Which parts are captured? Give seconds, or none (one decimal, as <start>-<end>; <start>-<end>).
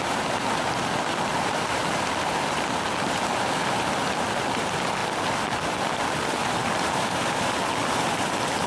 0.0-1.3; 1.8-6.4; 7.5-8.7